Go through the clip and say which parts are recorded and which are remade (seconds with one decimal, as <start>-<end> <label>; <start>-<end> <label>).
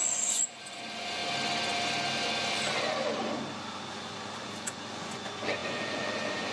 0.0-1.2 remade; 1.2-3.9 recorded; 3.9-6.5 remade